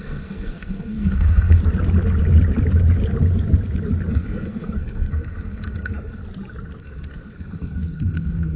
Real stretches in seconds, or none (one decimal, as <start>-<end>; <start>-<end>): 1.6-4.1; 6.2-6.8